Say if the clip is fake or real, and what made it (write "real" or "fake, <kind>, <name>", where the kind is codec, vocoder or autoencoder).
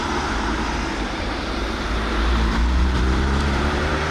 fake, vocoder, BigVGAN v2